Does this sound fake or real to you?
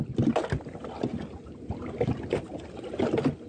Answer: real